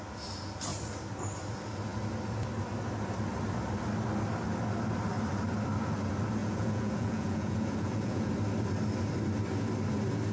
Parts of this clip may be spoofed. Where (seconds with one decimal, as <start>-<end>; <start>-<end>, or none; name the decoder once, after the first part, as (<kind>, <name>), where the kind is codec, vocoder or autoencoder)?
6.4-8.3 (vocoder, Vocos)